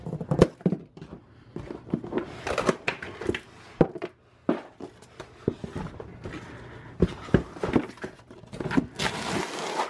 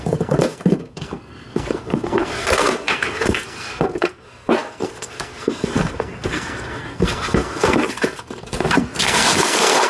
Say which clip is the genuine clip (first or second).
first